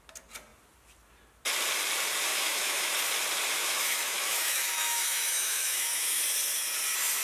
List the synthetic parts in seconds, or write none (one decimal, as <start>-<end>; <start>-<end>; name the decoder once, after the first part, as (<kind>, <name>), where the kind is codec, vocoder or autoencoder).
2.3-2.9 (autoencoder, DAC-VAE); 3.6-6.2